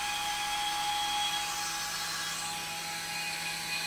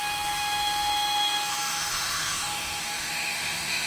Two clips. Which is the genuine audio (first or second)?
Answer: first